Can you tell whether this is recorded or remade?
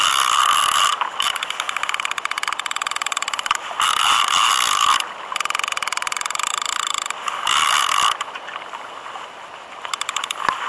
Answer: recorded